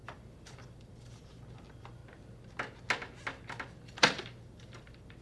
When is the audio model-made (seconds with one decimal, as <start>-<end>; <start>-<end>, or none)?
0.0-2.0; 3.8-5.2

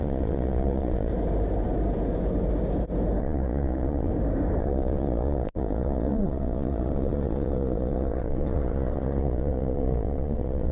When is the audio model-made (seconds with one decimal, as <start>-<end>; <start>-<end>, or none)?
0.0-1.1; 3.2-4.1; 4.6-10.7

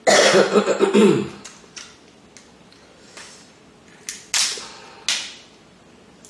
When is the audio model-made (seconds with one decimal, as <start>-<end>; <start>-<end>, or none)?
none

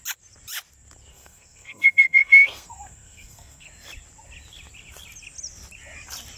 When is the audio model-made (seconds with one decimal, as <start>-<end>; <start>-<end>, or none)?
1.1-3.7

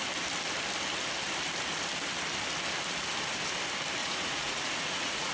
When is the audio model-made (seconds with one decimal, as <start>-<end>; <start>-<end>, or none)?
4.0-5.3